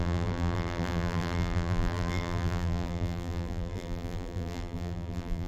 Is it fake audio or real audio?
fake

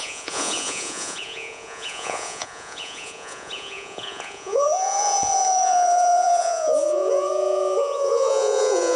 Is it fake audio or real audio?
fake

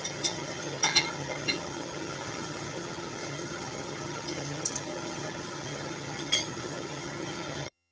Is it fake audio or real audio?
fake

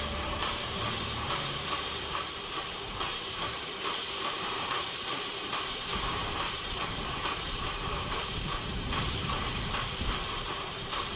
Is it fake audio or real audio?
fake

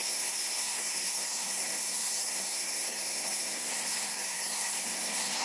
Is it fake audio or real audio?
fake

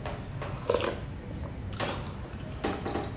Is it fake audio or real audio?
real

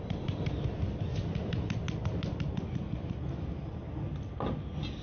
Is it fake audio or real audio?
real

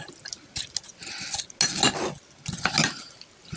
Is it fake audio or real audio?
real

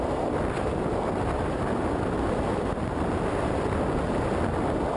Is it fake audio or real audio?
real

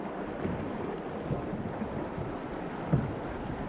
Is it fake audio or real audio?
real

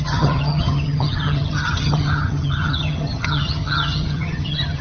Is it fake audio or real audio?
fake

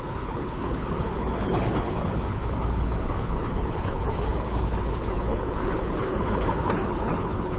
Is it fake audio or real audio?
fake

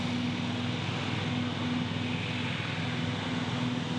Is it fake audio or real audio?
real